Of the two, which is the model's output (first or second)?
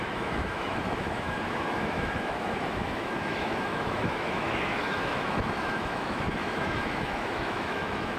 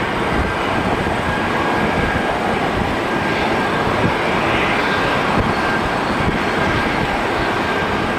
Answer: first